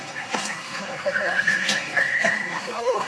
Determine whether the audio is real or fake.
fake